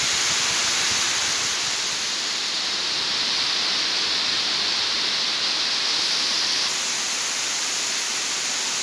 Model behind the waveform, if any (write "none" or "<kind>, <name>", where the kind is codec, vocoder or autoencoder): none